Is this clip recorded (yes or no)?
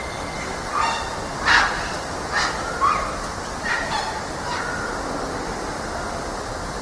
no